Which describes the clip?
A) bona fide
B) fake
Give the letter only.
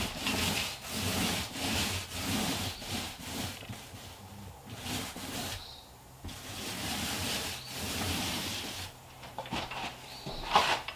B